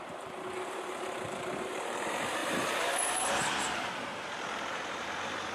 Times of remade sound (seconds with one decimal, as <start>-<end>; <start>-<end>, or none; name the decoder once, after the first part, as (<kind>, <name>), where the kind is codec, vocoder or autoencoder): 0.0-5.5 (vocoder, BigVGAN v2)